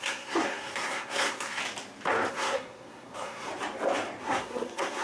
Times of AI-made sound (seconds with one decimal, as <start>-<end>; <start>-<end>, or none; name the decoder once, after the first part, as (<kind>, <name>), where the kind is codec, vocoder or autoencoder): 0.0-1.6 (codec, SNAC); 2.3-3.5; 4.2-5.0